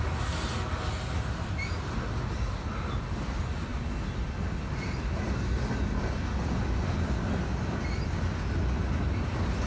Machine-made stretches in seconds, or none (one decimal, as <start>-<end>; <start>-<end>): none